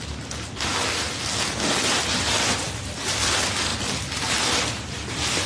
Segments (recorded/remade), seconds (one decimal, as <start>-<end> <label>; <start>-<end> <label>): 0.0-5.5 recorded